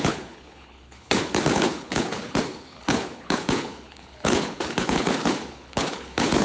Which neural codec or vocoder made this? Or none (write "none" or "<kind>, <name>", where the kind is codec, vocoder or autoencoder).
codec, HILCodec